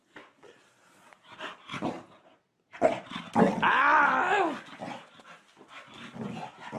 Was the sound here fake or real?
real